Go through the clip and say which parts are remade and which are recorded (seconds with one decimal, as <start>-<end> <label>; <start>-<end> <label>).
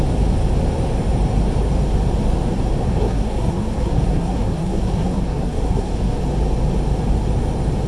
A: 0.0-2.8 recorded; 2.8-6.2 remade; 6.2-7.9 recorded